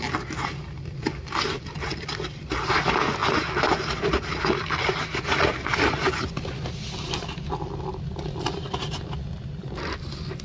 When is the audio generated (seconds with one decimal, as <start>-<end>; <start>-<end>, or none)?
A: none